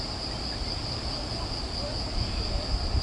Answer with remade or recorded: recorded